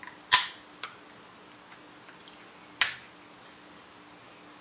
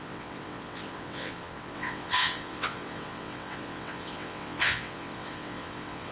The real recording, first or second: first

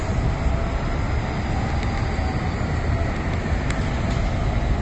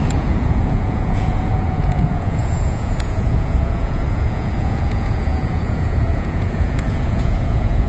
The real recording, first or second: first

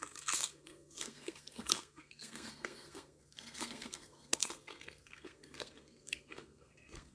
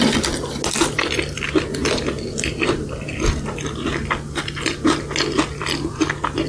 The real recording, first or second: second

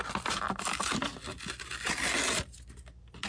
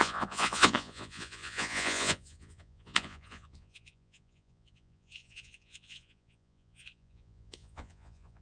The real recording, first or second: first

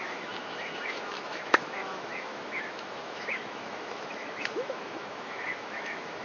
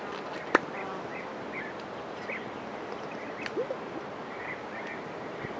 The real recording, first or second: second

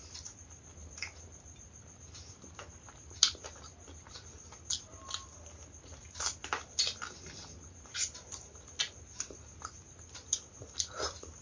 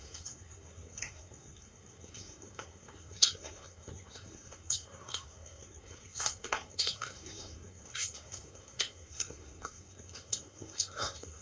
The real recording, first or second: first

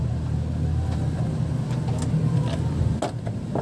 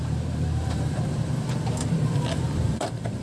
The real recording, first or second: first